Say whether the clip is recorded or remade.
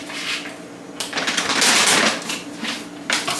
recorded